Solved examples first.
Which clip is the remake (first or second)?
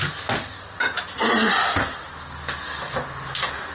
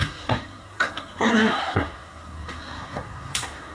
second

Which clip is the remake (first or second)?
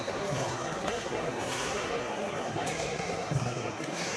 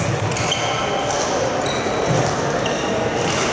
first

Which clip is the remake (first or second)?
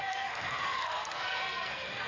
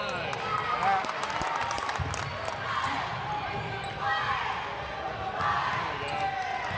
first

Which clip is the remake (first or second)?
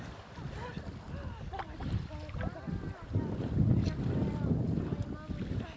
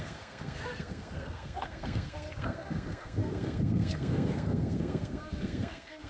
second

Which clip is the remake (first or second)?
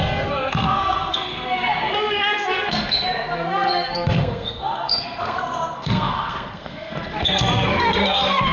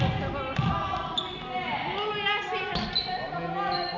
first